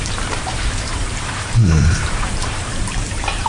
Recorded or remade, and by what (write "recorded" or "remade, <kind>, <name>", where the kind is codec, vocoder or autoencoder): remade, vocoder, BigVGAN v2